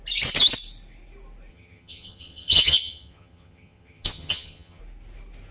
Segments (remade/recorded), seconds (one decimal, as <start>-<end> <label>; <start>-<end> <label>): 0.0-1.5 recorded; 1.5-4.8 remade; 4.8-5.5 recorded